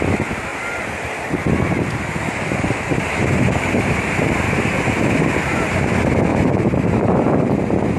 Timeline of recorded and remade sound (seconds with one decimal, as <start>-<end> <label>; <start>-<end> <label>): 0.0-3.2 recorded; 3.2-3.9 remade; 3.9-6.3 recorded; 6.3-6.8 remade; 6.8-8.0 recorded